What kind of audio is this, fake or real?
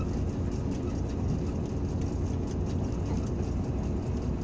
real